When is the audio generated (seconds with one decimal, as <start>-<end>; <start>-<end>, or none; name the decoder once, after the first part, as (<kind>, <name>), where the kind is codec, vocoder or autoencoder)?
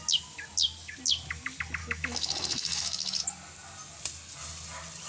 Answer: 1.8-3.2 (autoencoder, DAC-VAE)